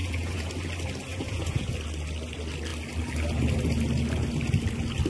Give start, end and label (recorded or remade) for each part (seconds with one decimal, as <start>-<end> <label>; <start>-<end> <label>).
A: 0.0-0.5 remade; 0.5-1.1 recorded; 1.1-1.7 remade; 1.7-5.1 recorded